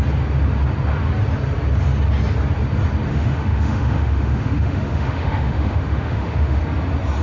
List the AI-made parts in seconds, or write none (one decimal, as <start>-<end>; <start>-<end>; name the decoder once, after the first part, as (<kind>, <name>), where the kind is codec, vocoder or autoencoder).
3.1-6.6 (autoencoder, DAC-VAE)